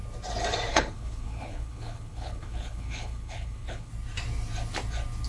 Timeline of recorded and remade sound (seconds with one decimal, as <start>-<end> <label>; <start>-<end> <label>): 0.0-0.7 recorded; 0.7-3.9 remade; 3.9-5.3 recorded